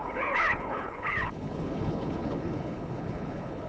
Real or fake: fake